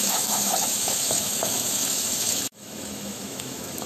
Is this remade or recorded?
remade